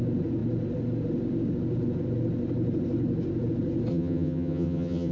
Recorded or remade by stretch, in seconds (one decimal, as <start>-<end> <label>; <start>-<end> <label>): 0.0-3.9 recorded; 3.9-5.1 remade

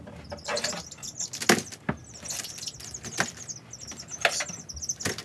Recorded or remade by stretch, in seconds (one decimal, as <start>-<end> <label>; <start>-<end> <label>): 0.0-5.2 recorded

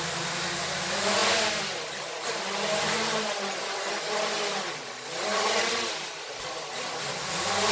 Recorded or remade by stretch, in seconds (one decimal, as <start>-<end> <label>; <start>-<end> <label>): 0.0-7.7 recorded